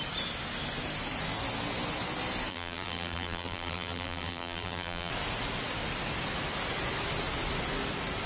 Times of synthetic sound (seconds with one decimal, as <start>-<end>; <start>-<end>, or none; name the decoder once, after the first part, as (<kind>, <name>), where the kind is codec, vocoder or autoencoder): 2.5-5.1 (vocoder, BigVGAN v2)

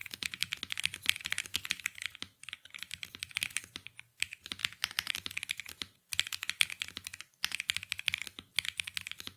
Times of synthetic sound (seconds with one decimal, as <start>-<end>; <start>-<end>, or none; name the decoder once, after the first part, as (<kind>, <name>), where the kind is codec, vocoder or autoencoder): 4.6-5.1 (vocoder, BigVGAN v2)

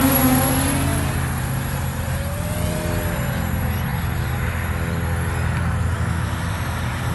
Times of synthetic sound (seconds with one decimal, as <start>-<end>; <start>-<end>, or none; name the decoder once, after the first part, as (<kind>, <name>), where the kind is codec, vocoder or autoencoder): none

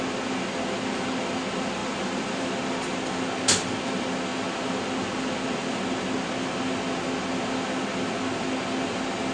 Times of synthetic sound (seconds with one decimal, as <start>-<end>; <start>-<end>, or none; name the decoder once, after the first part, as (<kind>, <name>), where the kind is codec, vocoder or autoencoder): 1.8-2.5 (vocoder, BigVGAN v2)

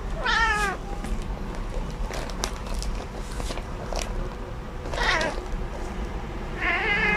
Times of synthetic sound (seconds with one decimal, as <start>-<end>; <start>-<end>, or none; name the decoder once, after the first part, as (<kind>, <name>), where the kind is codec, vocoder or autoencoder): 0.0-0.5 (vocoder, BigVGAN v2); 1.2-7.2

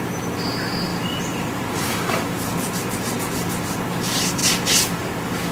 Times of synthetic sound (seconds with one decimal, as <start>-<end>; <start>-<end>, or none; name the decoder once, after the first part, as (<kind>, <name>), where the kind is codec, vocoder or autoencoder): 0.9-3.8 (vocoder, BigVGAN v2); 4.4-5.1

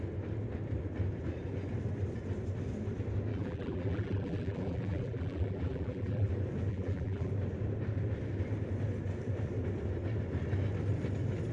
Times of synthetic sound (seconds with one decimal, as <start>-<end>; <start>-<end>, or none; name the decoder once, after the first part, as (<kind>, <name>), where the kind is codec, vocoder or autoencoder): 3.3-6.3 (vocoder, BigVGAN v2); 6.7-7.3